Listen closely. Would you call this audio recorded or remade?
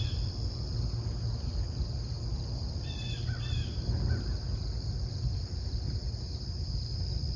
recorded